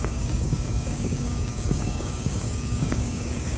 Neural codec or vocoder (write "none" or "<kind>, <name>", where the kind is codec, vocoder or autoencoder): codec, DAC